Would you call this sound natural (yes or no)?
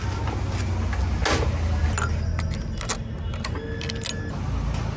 yes